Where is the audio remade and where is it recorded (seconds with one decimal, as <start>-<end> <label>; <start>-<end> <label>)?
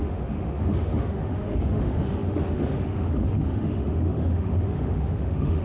0.0-5.6 remade